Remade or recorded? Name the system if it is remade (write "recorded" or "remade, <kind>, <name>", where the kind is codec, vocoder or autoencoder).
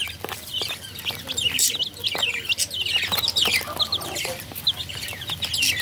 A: recorded